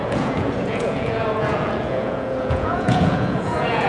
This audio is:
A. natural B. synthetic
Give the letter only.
B